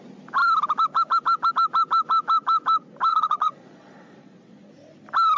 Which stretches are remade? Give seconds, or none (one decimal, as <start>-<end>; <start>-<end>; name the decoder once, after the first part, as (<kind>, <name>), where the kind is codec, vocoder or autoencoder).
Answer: 3.1-4.7 (vocoder, Vocos)